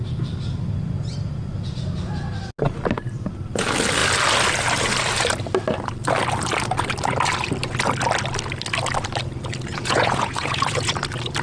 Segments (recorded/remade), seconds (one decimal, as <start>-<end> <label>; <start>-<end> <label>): 0.0-9.7 recorded; 9.7-10.9 remade; 10.9-11.4 recorded